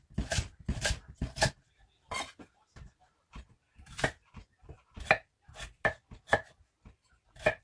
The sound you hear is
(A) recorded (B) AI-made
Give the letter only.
A